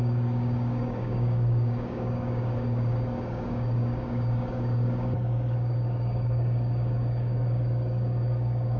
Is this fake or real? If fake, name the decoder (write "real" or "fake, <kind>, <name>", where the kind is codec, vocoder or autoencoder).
fake, codec, DAC